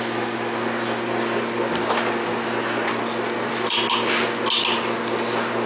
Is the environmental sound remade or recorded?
recorded